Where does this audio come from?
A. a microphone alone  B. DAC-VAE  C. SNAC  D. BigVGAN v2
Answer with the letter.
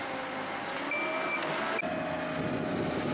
A